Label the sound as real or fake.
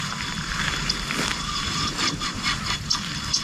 real